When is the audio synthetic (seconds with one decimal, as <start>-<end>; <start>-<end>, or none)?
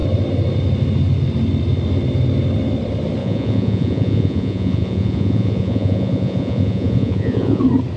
3.2-7.6